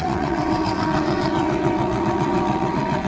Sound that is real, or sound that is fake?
fake